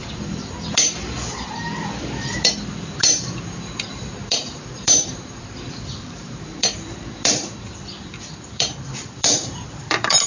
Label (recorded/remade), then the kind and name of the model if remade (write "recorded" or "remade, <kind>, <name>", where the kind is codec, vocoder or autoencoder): remade, vocoder, BigVGAN v2